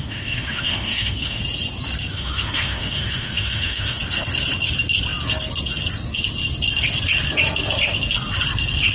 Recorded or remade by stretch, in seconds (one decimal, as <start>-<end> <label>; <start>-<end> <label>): 0.0-1.4 remade; 1.4-2.1 recorded; 2.1-4.0 remade; 4.0-8.9 recorded